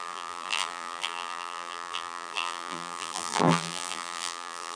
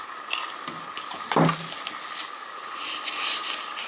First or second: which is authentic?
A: second